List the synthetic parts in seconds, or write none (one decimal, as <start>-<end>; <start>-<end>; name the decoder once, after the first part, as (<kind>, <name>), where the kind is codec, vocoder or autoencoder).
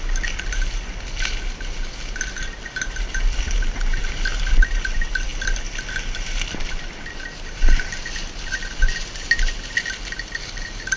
none